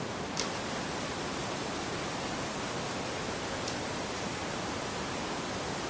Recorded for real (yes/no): yes